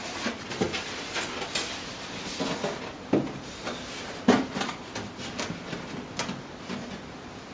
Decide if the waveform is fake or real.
real